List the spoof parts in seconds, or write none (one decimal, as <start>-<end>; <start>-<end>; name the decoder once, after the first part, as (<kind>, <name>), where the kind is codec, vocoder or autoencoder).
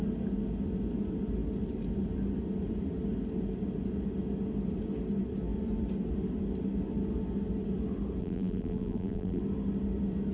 8.2-9.4 (vocoder, BigVGAN v2)